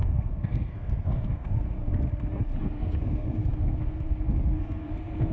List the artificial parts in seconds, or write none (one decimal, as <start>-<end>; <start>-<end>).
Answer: 0.0-1.8; 2.6-5.3